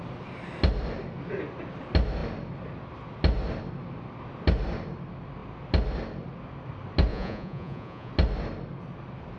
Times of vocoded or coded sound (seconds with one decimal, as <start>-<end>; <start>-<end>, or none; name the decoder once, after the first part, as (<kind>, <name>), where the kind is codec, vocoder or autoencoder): 7.1-8.1 (vocoder, Vocos)